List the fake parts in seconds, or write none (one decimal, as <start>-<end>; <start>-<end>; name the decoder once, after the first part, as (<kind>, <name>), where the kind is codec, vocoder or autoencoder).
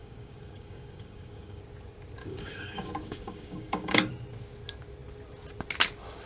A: 0.0-1.6 (codec, DAC); 2.2-4.1